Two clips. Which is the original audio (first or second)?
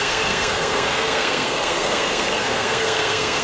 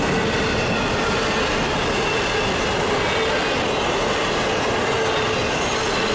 second